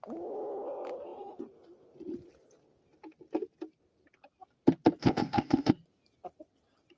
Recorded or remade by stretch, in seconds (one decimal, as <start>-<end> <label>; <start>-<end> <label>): 0.0-5.0 recorded; 5.0-5.7 remade; 5.7-7.0 recorded